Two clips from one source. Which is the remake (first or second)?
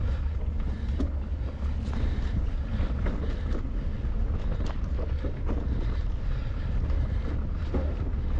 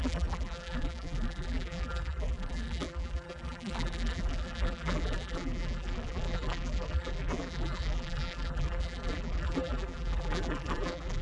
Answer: second